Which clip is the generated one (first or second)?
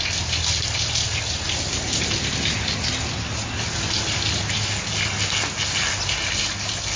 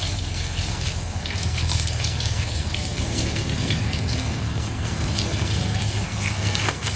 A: second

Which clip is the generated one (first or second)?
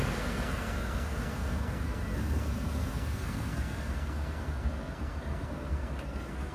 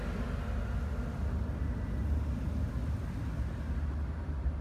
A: first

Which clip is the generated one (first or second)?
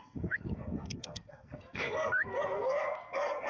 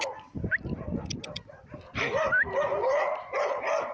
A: first